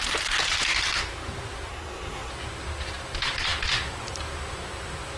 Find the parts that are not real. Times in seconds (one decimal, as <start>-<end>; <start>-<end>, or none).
1.7-2.3